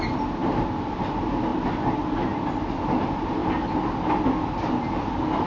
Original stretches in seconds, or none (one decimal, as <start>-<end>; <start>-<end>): 0.0-5.5